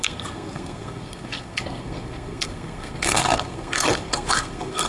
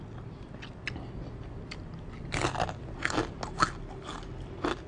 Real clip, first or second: second